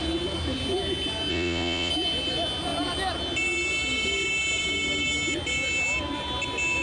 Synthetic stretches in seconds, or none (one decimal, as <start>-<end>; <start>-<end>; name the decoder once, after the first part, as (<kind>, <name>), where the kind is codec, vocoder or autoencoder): 1.3-1.9 (vocoder, Vocos)